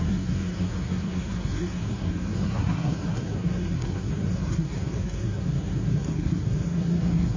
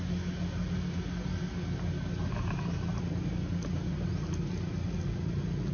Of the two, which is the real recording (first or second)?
second